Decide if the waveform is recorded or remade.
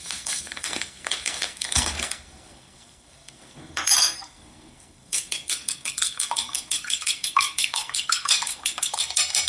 remade